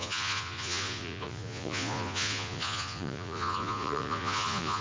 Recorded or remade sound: remade